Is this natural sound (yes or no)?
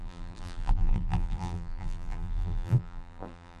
no